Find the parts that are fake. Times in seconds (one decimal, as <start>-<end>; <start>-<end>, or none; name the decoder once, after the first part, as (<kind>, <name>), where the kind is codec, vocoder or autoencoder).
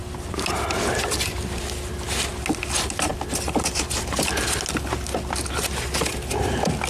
none